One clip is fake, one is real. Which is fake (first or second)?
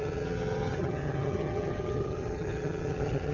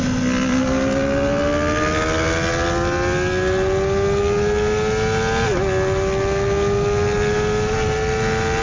first